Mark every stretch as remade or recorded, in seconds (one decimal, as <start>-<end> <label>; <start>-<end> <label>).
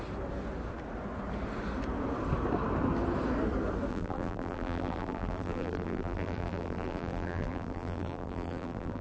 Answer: 0.0-3.9 recorded; 3.9-9.0 remade